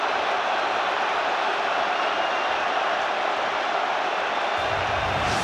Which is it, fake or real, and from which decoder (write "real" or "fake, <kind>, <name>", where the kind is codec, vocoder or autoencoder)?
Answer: real